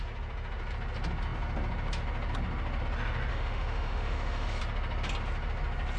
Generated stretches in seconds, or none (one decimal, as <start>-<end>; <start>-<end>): 3.3-4.6